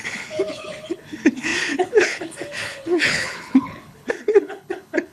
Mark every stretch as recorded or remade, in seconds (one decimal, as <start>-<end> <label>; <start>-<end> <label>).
0.0-5.1 remade